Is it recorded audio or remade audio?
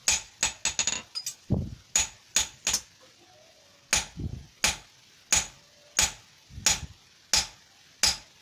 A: recorded